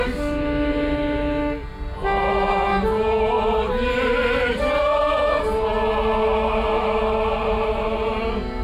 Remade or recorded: recorded